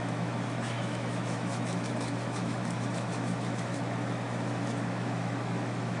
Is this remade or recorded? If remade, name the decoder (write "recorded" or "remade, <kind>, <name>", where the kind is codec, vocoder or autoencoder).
remade, autoencoder, DAC-VAE